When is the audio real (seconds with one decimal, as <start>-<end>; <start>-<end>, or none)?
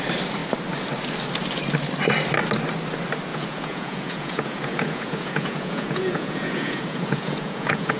0.0-3.3